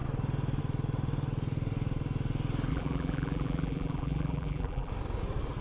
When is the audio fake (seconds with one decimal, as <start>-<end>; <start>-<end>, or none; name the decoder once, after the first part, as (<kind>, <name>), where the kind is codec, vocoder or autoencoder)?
2.7-4.9 (vocoder, BigVGAN v2)